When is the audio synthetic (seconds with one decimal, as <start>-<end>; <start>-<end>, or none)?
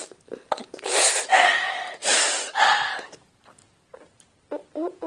none